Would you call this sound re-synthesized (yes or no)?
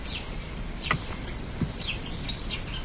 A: yes